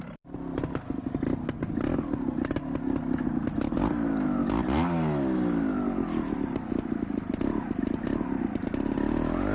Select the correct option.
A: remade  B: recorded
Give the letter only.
B